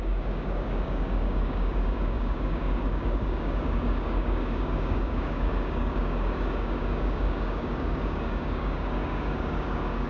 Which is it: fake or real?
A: fake